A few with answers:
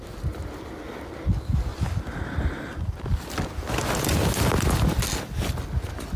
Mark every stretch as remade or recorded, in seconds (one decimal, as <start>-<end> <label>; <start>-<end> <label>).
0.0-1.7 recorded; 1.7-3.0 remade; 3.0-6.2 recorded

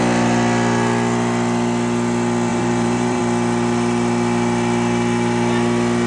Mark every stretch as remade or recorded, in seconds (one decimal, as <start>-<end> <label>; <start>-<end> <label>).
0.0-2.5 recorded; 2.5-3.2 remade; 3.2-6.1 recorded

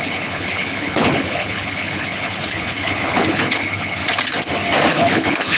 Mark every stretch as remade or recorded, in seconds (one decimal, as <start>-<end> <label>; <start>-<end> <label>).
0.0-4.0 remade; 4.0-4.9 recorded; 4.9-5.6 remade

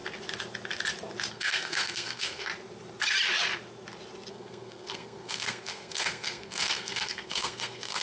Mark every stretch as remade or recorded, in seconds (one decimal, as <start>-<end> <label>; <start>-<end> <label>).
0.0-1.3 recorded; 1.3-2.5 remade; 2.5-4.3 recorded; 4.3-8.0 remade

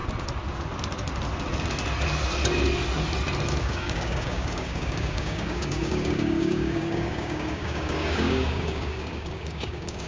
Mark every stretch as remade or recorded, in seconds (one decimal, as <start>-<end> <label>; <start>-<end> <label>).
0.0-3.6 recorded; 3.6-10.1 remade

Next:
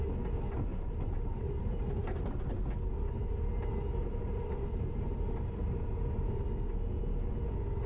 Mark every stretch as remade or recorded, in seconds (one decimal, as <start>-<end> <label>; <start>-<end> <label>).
0.0-0.7 recorded; 0.7-2.3 remade; 2.3-4.0 recorded; 4.0-6.4 remade; 6.4-7.9 recorded